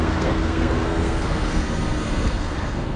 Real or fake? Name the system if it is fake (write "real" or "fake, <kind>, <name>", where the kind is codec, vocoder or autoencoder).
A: fake, codec, SNAC